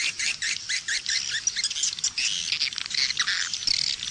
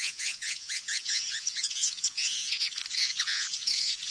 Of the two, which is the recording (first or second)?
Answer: first